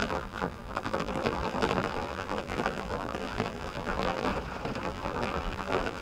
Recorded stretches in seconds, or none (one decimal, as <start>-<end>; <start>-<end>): 4.3-4.8